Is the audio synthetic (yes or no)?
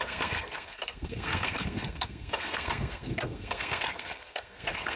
yes